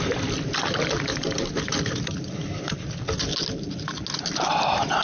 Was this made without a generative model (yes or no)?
yes